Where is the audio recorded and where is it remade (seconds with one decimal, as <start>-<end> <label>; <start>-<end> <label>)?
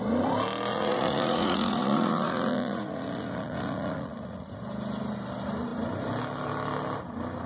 0.0-0.7 recorded; 0.7-4.5 remade; 4.5-7.5 recorded